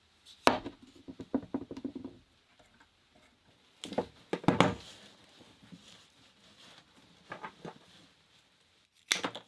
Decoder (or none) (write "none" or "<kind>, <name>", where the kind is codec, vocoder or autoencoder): none